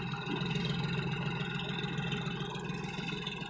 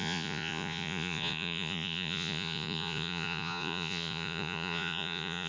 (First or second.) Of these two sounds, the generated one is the second